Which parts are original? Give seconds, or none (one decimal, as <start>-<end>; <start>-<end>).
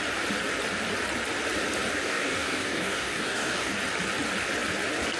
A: 0.0-2.0; 3.7-5.2